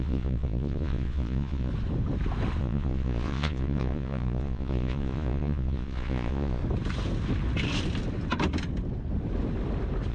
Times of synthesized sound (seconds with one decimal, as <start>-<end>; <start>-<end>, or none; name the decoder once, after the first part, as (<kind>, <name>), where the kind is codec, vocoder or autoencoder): 0.0-1.7 (vocoder, Vocos); 2.6-6.6